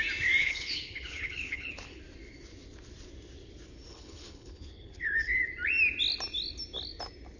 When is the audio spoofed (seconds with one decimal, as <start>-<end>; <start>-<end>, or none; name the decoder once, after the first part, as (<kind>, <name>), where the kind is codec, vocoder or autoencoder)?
0.4-2.0 (codec, HILCodec); 3.9-5.4